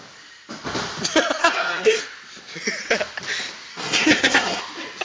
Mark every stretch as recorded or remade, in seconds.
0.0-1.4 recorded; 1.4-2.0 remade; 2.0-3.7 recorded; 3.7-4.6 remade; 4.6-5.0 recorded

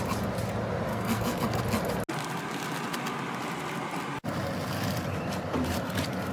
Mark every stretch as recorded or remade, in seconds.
0.0-0.9 recorded; 0.9-1.6 remade; 1.6-6.3 recorded

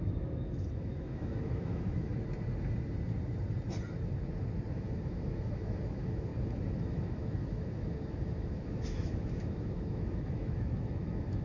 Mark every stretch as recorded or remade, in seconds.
0.0-2.1 remade; 2.1-4.7 recorded; 4.7-6.3 remade; 6.3-6.8 recorded; 6.8-11.4 remade

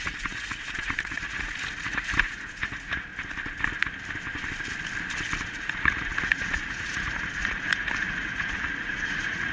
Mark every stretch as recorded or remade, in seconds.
0.0-3.1 remade; 3.1-5.6 recorded; 5.6-9.5 remade

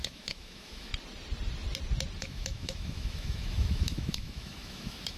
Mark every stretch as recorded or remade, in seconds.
0.0-0.9 remade; 0.9-2.2 recorded; 2.2-5.2 remade